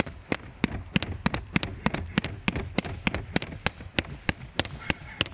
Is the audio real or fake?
real